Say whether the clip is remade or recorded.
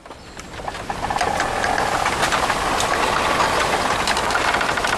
recorded